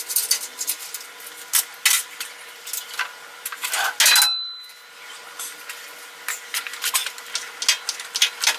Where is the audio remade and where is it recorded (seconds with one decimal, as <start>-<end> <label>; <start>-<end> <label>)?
0.0-8.6 recorded